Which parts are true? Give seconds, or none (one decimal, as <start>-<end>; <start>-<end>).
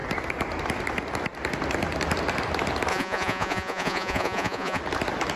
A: 0.0-2.9; 4.8-5.4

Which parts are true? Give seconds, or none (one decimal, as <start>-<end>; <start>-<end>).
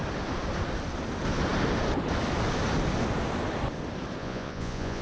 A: 0.0-4.2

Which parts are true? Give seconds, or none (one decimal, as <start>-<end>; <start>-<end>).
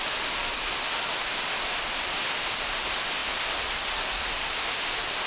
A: 0.0-0.4; 2.2-5.3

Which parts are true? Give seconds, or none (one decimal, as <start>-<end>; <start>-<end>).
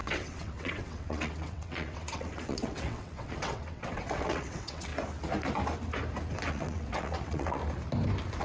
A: 4.9-6.5; 7.6-8.4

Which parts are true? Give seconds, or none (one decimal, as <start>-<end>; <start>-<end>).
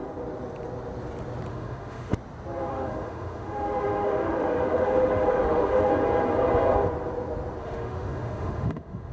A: 0.0-1.5; 2.1-2.7; 5.9-7.6